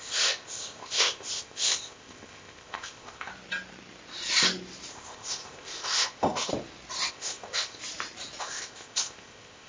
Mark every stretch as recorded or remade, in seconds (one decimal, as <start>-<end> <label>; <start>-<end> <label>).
0.0-3.3 remade; 3.3-4.9 recorded; 4.9-6.5 remade; 6.5-7.1 recorded; 7.1-7.8 remade; 7.8-8.4 recorded; 8.4-9.7 remade